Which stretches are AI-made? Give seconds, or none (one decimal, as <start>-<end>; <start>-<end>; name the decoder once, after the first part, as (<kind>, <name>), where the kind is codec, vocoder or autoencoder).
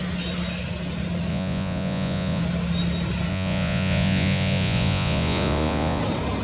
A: 1.3-2.4 (vocoder, Vocos); 3.3-6.0